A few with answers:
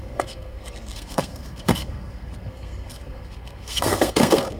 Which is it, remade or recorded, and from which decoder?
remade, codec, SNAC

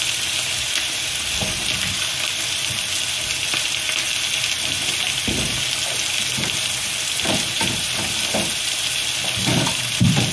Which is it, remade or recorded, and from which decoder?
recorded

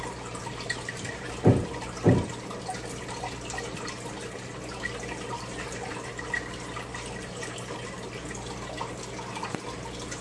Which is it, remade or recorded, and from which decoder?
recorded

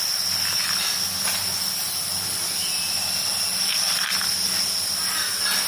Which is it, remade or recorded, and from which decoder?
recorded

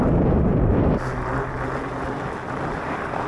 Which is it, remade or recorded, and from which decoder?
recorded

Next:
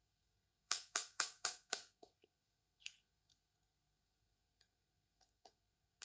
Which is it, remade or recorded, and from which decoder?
remade, codec, SNAC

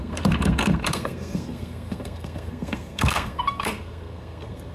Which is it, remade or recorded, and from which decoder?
remade, codec, SNAC